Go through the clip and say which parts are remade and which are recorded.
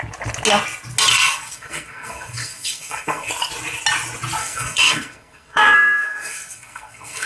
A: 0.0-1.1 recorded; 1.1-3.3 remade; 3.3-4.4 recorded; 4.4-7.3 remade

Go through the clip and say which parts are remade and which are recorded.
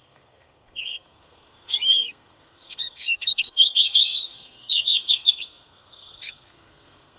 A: 0.0-7.2 remade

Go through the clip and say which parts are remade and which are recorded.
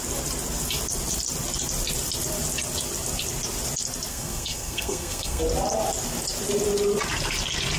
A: 0.0-4.1 recorded; 4.1-5.4 remade; 5.4-7.8 recorded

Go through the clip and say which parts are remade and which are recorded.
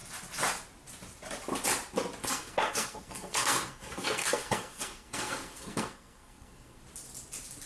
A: 0.0-2.2 recorded; 2.2-6.8 remade; 6.8-7.7 recorded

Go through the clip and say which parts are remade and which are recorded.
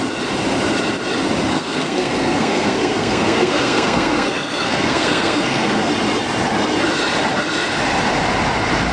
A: 0.0-1.5 recorded; 1.5-5.9 remade; 5.9-8.9 recorded